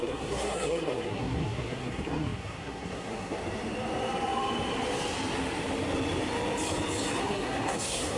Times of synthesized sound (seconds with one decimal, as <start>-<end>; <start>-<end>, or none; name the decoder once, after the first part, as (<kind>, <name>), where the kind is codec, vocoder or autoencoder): 0.0-3.4 (codec, SNAC); 7.2-8.2